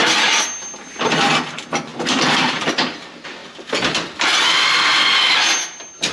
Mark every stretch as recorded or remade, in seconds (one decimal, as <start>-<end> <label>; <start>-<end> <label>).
0.0-1.9 recorded; 1.9-2.7 remade; 2.7-3.4 recorded; 3.4-5.0 remade; 5.0-6.1 recorded